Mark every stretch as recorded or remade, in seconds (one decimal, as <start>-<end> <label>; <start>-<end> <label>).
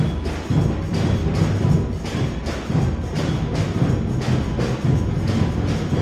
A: 0.0-6.0 recorded